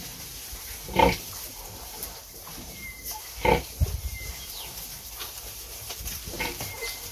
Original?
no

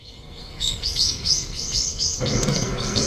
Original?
no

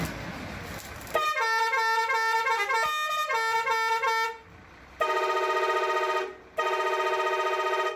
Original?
yes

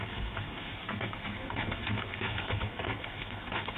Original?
no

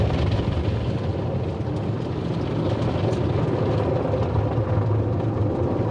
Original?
yes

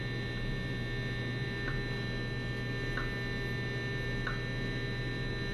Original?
yes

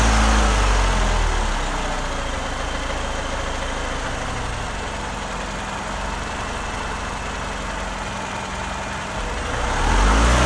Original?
yes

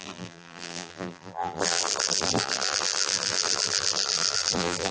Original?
no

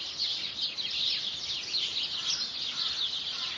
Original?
yes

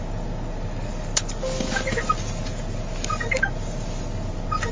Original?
yes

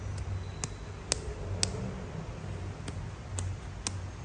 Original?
yes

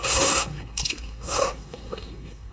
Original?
no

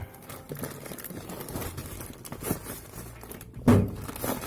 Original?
yes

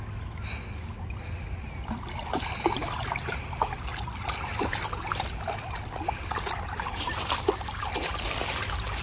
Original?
yes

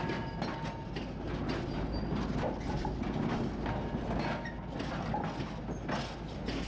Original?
yes